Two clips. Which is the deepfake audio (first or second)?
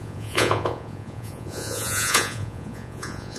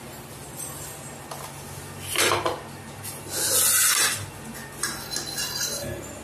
first